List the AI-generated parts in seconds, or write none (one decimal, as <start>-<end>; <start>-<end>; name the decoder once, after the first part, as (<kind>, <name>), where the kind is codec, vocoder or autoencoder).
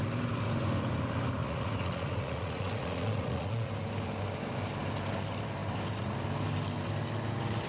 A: 1.4-3.7 (vocoder, Vocos)